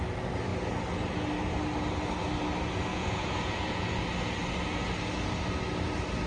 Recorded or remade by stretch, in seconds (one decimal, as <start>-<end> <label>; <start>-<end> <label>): 0.0-2.9 recorded; 2.9-4.0 remade; 4.0-6.3 recorded